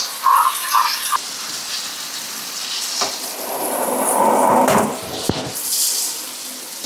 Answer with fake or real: real